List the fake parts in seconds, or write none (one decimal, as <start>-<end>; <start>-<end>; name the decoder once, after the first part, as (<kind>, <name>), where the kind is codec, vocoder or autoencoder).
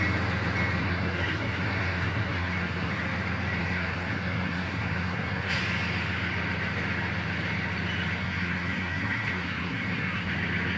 0.8-2.9 (codec, SNAC); 3.6-5.6; 8.2-10.3